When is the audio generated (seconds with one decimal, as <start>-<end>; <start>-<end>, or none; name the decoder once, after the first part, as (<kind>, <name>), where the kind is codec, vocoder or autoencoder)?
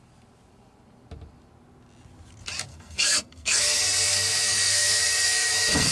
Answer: 2.7-5.9 (codec, SNAC)